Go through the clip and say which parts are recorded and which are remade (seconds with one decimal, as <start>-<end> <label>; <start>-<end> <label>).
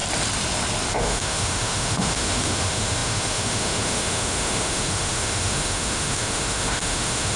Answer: 0.0-0.9 recorded; 0.9-7.4 remade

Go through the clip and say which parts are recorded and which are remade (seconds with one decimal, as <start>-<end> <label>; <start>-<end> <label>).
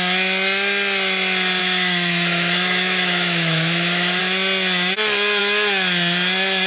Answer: 0.0-1.6 recorded; 1.6-4.2 remade; 4.2-6.7 recorded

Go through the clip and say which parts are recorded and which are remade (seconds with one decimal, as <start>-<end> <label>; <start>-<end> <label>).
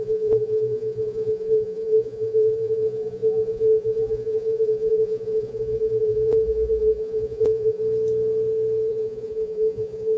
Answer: 0.0-7.8 remade; 7.8-8.9 recorded; 8.9-10.2 remade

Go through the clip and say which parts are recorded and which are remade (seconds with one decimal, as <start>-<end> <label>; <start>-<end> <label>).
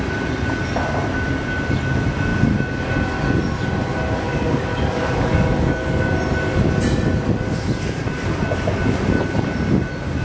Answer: 0.0-4.3 recorded; 4.3-6.0 remade; 6.0-10.2 recorded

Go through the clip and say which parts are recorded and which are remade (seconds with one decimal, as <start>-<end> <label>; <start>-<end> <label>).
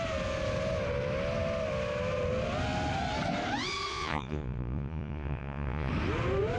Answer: 0.0-3.9 recorded; 3.9-5.9 remade; 5.9-6.6 recorded